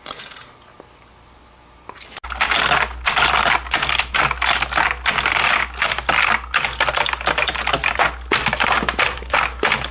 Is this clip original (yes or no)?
yes